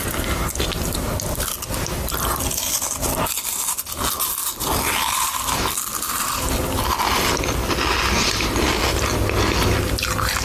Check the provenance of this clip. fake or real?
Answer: real